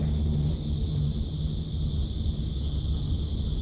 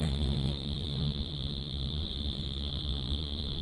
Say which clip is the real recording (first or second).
first